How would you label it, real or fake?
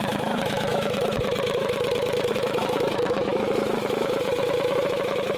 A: fake